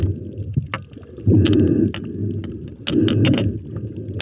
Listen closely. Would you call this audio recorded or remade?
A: recorded